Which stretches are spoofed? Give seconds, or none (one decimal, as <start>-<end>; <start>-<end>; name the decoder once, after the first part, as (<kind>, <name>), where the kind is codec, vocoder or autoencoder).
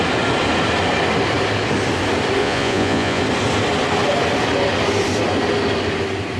2.4-3.2 (vocoder, Vocos)